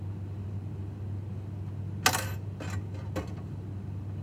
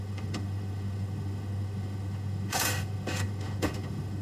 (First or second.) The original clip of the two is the first